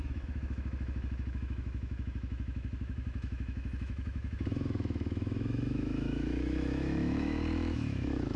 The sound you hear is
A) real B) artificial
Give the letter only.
B